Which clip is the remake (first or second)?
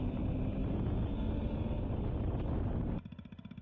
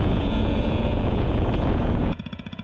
second